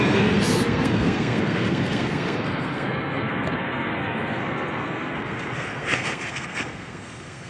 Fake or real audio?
fake